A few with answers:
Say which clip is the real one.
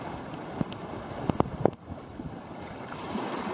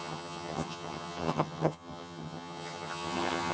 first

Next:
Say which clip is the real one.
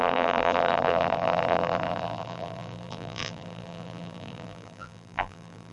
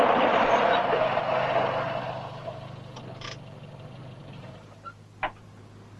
second